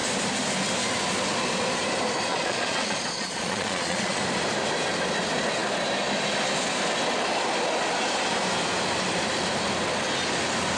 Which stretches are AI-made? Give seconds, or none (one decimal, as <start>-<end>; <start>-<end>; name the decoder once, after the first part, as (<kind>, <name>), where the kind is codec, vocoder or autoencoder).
2.3-4.2 (vocoder, Vocos)